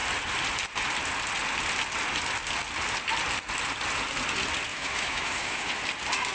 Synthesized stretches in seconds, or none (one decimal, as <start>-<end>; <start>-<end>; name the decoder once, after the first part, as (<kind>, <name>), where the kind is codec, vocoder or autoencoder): 4.7-5.7 (autoencoder, DAC-VAE)

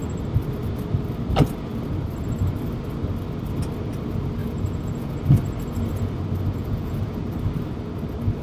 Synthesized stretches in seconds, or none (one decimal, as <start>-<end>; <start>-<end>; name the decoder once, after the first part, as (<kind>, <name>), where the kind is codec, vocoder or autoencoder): 4.4-5.2 (vocoder, Vocos); 6.6-7.2

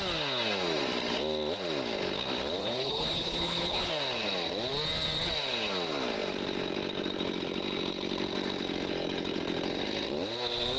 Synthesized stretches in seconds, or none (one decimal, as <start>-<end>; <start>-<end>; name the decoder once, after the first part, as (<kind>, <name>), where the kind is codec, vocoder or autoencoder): 2.6-3.9 (codec, HILCodec)

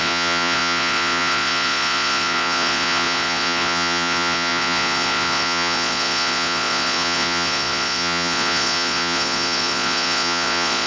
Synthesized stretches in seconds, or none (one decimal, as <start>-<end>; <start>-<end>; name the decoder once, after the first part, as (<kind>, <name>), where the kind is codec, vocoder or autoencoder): 0.0-10.9 (vocoder, Vocos)

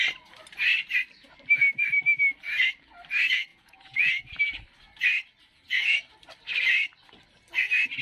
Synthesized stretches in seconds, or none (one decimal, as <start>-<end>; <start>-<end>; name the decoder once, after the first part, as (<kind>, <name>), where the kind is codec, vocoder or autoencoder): 3.5-4.1 (vocoder, Vocos)